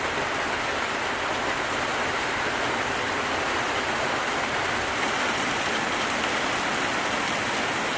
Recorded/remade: remade